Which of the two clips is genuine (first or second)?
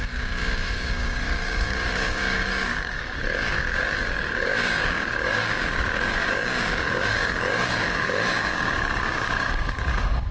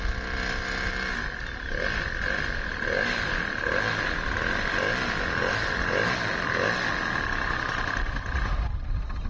second